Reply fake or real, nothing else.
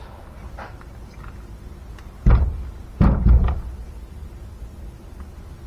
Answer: real